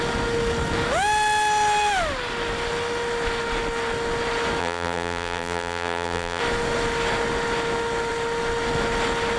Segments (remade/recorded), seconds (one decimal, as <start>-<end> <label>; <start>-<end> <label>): 0.0-4.6 recorded; 4.6-6.4 remade; 6.4-9.4 recorded